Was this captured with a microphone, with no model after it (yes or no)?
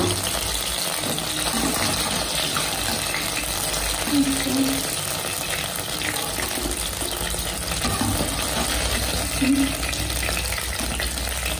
yes